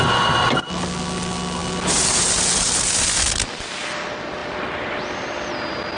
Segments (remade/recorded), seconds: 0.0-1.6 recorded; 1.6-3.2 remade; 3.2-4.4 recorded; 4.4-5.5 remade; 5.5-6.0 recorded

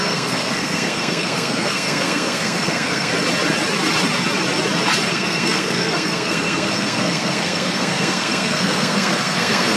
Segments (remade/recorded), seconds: 0.0-3.1 remade; 3.1-5.1 recorded; 5.1-9.8 remade

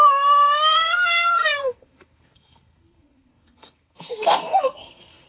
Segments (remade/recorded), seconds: 0.0-5.3 remade

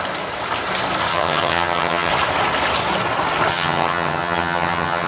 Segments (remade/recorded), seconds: 0.0-1.1 recorded; 1.1-2.1 remade; 2.1-3.5 recorded; 3.5-5.1 remade

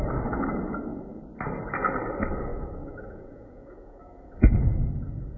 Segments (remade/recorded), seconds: 0.0-2.5 recorded; 2.5-4.9 remade; 4.9-5.4 recorded

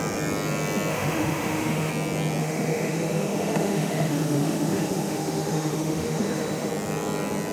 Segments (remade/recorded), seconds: 0.0-0.9 recorded; 0.9-1.9 remade; 1.9-2.4 recorded; 2.4-6.7 remade; 6.7-7.5 recorded

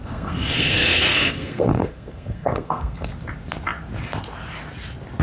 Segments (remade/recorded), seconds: 0.0-3.1 remade; 3.1-5.2 recorded

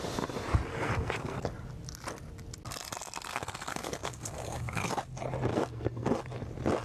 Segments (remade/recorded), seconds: 0.0-0.7 recorded; 0.7-1.5 remade; 1.5-3.3 recorded; 3.3-4.9 remade; 4.9-5.5 recorded; 5.5-6.2 remade; 6.2-6.8 recorded